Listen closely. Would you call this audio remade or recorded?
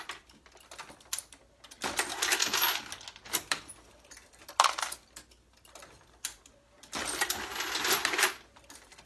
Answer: recorded